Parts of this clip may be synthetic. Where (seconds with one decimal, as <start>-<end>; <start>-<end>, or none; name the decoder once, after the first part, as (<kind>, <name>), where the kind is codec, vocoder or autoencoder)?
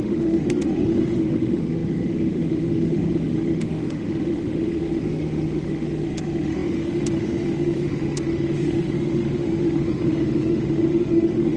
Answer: 0.0-11.6 (autoencoder, DAC-VAE)